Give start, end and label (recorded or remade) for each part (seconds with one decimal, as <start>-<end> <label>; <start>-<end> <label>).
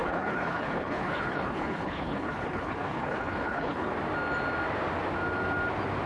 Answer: 0.0-3.9 remade; 3.9-6.1 recorded